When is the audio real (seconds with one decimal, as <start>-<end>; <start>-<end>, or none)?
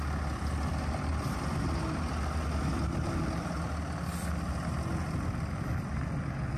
0.0-6.6